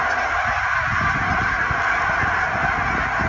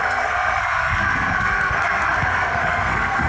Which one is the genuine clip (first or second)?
first